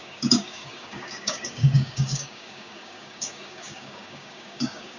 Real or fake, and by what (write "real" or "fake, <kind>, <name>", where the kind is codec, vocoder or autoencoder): fake, codec, DAC